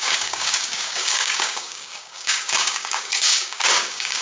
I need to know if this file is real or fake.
fake